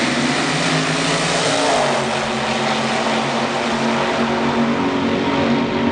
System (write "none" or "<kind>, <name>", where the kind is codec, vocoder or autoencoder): none